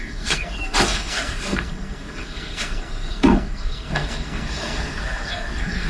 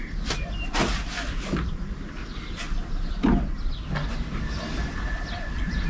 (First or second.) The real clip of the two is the second